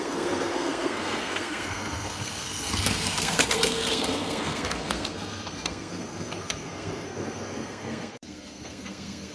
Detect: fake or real fake